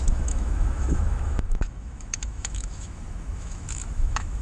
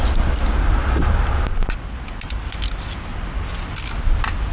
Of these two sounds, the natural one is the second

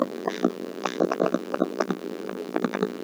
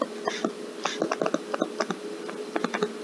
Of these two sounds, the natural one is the second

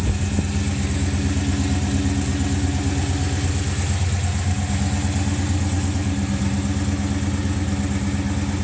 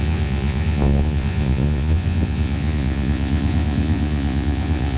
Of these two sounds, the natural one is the first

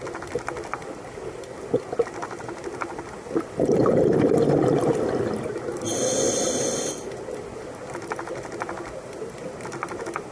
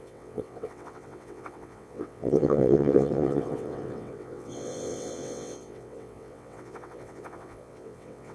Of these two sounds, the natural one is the first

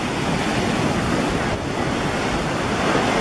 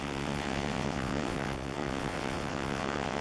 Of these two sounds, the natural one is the first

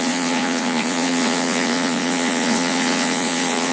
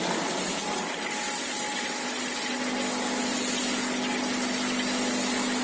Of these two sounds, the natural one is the second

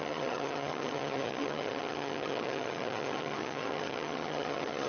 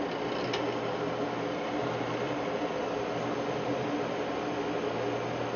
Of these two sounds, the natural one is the second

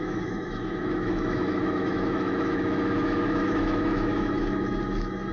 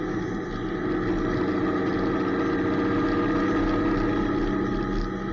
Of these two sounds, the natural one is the second